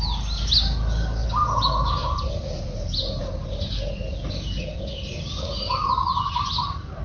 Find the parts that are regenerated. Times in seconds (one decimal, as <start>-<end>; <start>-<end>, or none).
none